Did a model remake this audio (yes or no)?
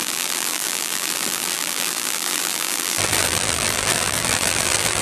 yes